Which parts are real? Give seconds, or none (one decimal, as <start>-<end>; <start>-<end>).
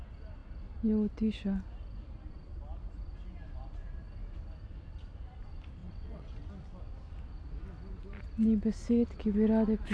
0.0-5.8; 6.5-9.9